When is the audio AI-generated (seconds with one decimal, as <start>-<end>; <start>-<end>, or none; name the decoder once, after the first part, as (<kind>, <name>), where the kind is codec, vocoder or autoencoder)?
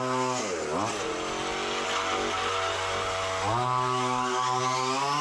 none